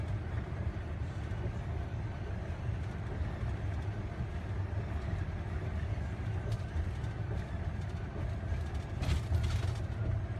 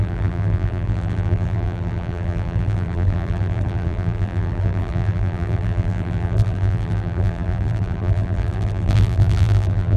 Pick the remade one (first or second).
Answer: second